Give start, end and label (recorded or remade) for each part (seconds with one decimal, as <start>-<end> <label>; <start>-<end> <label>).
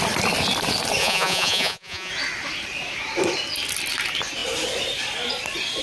0.0-1.0 recorded; 1.0-2.1 remade; 2.1-5.8 recorded